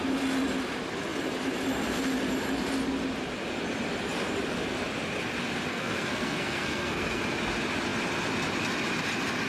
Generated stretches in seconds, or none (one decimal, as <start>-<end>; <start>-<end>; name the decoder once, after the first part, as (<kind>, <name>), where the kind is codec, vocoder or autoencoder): 5.7-7.2 (codec, SNAC)